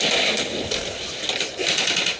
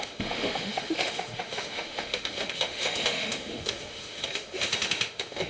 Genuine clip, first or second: first